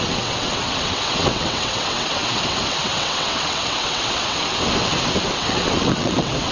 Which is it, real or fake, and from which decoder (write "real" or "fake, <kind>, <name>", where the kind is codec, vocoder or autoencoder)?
fake, vocoder, WaveNeXt